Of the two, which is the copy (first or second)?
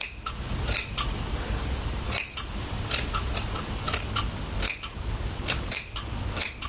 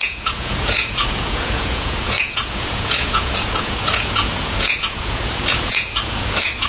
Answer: second